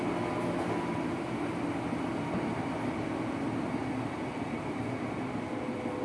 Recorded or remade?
recorded